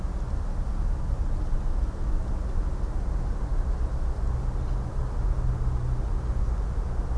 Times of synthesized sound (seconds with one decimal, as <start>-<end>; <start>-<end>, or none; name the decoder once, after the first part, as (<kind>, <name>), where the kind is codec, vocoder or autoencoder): none